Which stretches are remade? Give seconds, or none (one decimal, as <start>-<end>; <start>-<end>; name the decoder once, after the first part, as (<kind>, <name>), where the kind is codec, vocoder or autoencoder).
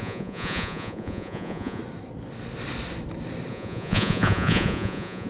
0.0-1.8 (vocoder, Vocos); 3.5-5.3